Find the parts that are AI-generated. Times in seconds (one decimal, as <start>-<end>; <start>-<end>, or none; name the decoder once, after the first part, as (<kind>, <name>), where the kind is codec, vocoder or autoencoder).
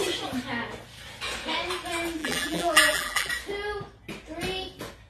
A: 2.2-3.3 (vocoder, BigVGAN v2)